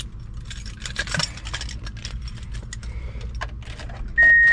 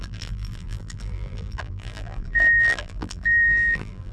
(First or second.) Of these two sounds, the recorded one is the first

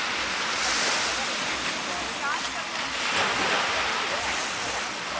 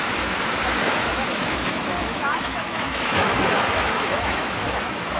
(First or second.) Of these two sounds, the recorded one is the first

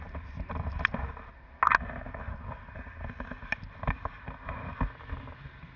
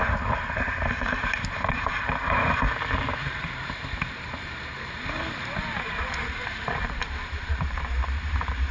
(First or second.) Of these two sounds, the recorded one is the first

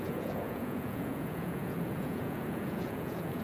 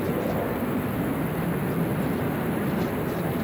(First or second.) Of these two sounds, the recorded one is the second